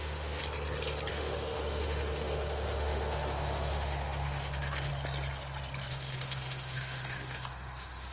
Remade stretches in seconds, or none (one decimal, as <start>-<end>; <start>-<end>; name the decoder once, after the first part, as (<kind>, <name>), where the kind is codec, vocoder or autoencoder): 0.0-0.4 (autoencoder, DAC-VAE); 1.1-4.9; 5.9-8.1

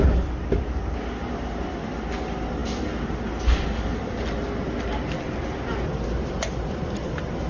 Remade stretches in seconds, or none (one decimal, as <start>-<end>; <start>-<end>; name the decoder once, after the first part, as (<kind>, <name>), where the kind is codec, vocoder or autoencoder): none

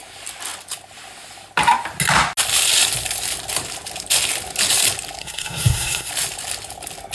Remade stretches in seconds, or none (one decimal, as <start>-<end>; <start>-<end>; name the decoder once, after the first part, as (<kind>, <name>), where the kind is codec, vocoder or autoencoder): 5.2-6.1 (codec, SNAC)

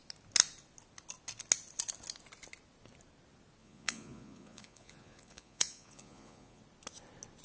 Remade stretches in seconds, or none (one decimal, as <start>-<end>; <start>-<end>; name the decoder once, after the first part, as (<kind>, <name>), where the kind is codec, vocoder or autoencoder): 3.6-6.6 (vocoder, Vocos)

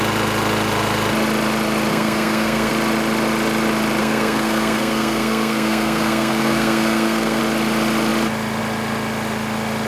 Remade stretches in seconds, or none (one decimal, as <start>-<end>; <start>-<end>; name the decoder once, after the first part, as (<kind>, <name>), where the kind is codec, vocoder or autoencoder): 1.9-2.7 (codec, SNAC); 4.0-7.4